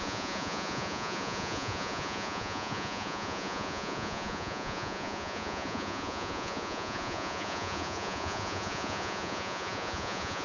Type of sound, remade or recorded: remade